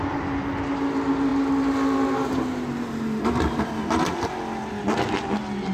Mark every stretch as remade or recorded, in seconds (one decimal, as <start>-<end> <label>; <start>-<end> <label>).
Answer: 0.0-5.7 recorded